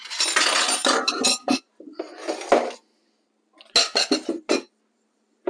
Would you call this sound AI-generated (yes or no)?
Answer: no